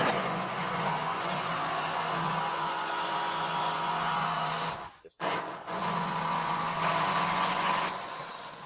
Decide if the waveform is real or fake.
fake